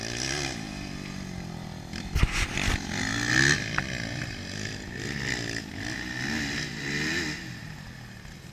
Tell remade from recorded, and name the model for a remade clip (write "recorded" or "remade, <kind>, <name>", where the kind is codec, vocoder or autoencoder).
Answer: recorded